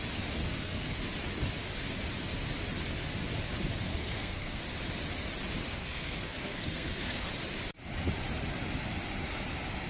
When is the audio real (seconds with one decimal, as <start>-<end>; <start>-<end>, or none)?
0.0-0.4; 1.0-3.9; 4.6-5.8; 7.3-9.9